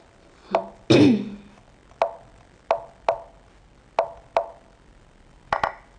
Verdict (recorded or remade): recorded